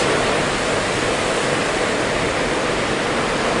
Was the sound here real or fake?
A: real